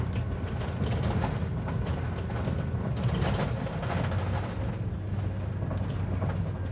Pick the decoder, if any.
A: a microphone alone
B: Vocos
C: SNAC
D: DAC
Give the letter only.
A